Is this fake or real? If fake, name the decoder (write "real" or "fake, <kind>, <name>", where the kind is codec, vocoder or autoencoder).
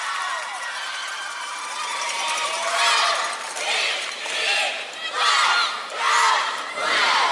fake, vocoder, BigVGAN v2